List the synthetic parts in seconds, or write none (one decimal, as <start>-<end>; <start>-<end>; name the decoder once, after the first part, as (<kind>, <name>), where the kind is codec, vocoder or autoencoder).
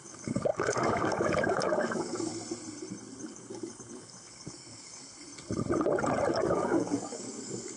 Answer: 0.0-2.3 (codec, DAC); 3.2-5.3; 6.3-7.8